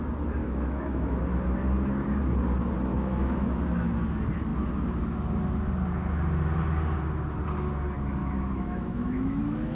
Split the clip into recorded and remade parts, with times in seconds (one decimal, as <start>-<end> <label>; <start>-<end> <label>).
0.0-0.4 recorded; 0.4-1.2 remade; 1.2-2.9 recorded; 2.9-3.6 remade; 3.6-8.2 recorded; 8.2-9.8 remade